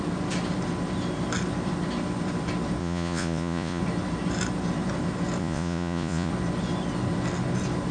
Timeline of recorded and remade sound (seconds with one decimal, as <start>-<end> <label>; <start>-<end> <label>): 0.0-2.8 recorded; 2.8-3.8 remade; 3.8-5.4 recorded; 5.4-6.3 remade; 6.3-7.9 recorded